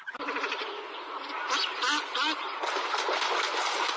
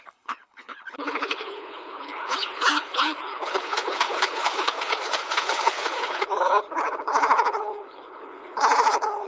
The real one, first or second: first